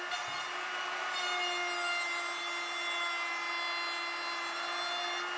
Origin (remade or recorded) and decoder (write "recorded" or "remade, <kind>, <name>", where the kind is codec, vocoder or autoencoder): recorded